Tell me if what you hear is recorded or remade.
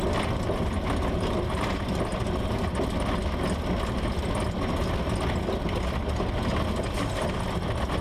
recorded